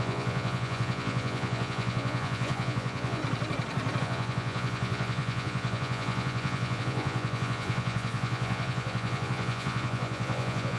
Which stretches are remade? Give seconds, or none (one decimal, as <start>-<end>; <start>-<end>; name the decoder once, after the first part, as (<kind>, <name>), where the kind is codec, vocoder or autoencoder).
0.0-3.2 (vocoder, Vocos); 4.0-10.8